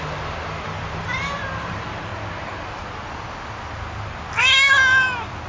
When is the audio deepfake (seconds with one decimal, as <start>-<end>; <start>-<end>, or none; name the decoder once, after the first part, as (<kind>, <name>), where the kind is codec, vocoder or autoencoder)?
0.0-2.1 (vocoder, BigVGAN v2); 4.3-5.5